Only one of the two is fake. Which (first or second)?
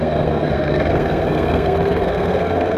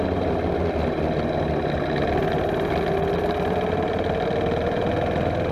first